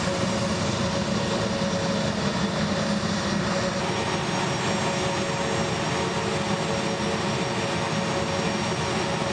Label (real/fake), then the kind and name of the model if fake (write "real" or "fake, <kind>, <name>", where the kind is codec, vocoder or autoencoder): real